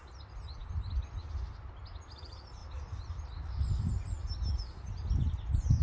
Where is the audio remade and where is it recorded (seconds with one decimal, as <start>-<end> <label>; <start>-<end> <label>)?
0.0-5.8 recorded